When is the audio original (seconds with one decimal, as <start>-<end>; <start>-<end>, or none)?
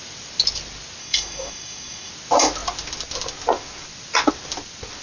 0.0-1.0; 2.1-5.0